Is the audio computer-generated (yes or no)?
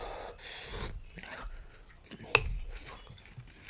no